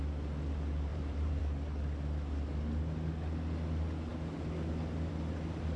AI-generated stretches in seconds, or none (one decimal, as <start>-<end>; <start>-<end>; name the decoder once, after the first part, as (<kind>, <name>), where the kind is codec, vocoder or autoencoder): 0.9-1.4 (vocoder, BigVGAN v2)

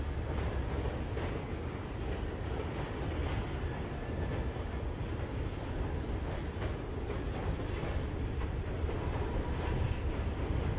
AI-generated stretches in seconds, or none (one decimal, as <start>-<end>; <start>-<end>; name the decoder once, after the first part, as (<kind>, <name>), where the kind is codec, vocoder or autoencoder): none

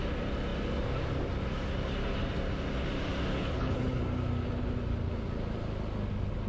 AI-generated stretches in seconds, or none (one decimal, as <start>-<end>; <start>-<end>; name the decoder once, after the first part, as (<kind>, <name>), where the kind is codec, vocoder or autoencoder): 3.3-4.0 (codec, HILCodec)

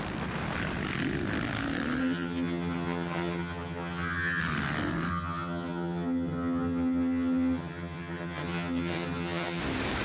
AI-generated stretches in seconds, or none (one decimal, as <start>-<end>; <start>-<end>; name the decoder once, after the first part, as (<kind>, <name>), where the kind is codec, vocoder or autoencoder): 2.0-4.4 (vocoder, HiFi-GAN); 5.1-9.6

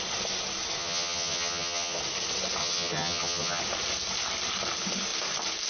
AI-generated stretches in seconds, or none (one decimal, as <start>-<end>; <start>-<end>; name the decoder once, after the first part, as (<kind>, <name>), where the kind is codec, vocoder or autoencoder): 0.8-2.0 (vocoder, HiFi-GAN); 2.6-3.6

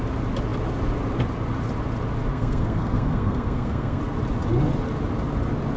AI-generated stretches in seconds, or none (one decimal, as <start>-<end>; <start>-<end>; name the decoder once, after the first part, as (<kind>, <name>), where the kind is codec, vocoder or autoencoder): 2.3-4.0 (codec, SNAC)